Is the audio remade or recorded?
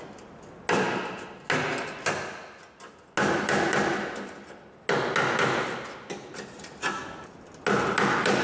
recorded